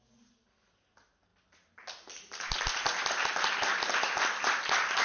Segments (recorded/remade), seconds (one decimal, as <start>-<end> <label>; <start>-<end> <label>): 0.0-5.0 recorded